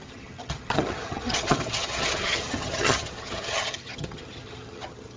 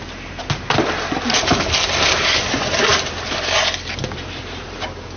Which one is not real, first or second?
first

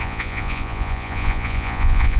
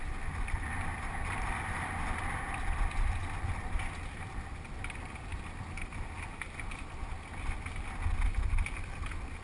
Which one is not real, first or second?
first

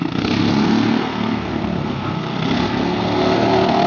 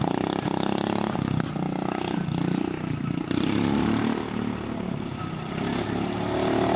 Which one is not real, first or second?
first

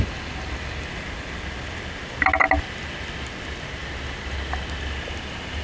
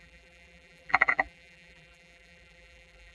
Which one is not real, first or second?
second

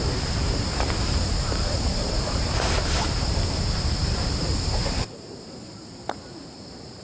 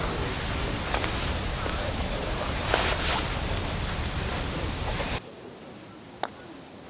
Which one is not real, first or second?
first